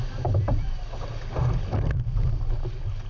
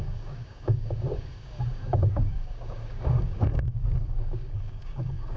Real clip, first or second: first